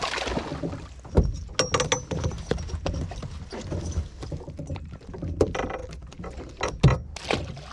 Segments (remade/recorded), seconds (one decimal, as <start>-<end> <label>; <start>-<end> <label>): 0.0-7.7 recorded